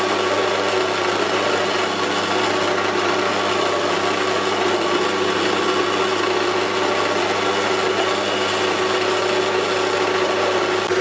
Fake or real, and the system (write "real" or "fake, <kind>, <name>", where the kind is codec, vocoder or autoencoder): real